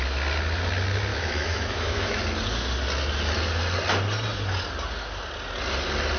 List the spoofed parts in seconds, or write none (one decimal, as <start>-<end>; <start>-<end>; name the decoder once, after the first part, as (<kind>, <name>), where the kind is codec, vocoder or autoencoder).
1.1-2.2 (autoencoder, DAC-VAE)